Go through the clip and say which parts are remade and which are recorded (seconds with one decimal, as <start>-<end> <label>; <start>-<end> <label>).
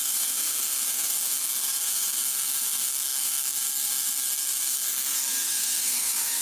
0.0-6.4 remade